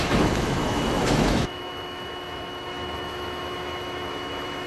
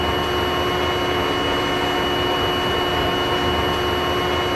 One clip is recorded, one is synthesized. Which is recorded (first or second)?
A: second